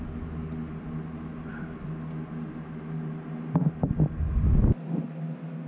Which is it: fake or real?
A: real